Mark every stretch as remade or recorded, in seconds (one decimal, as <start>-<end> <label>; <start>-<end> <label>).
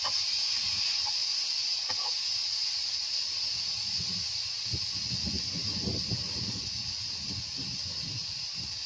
0.0-8.9 recorded